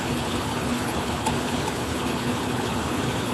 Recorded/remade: remade